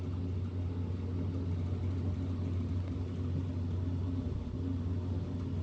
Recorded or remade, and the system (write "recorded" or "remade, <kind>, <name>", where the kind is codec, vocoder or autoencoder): recorded